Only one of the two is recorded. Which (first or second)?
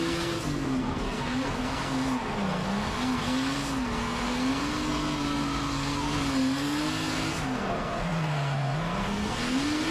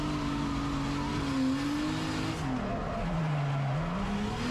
second